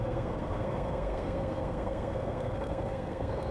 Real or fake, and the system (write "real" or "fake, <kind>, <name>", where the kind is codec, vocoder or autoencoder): fake, codec, SNAC